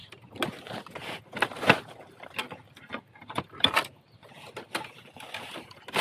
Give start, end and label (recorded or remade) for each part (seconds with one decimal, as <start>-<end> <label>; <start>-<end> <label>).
0.0-6.0 recorded